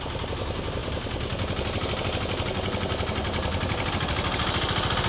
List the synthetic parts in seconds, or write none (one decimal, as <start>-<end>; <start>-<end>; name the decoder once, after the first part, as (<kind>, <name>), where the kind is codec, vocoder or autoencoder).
none